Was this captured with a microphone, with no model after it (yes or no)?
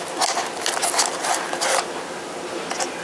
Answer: yes